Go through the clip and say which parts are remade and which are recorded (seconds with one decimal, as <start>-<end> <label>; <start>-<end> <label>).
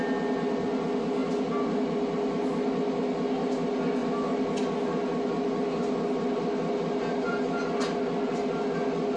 0.0-9.2 recorded